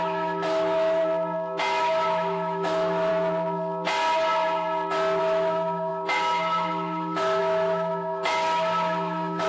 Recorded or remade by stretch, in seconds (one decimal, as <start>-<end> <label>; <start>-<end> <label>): 0.0-1.0 remade; 1.0-1.8 recorded; 1.8-3.1 remade; 3.1-5.2 recorded; 5.2-9.5 remade